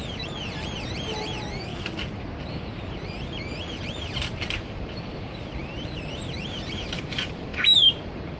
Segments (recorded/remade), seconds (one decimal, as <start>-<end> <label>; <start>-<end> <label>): 0.0-1.7 remade; 1.7-2.5 recorded; 2.5-8.4 remade